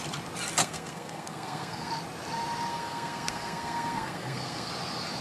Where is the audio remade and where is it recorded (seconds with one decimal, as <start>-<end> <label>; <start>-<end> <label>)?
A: 0.0-0.6 recorded; 0.6-1.9 remade; 1.9-2.7 recorded; 2.7-4.7 remade; 4.7-5.2 recorded